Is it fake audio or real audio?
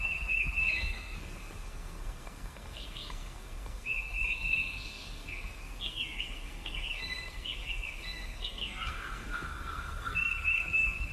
fake